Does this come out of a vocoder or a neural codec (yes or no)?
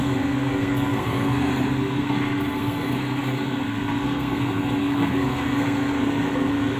yes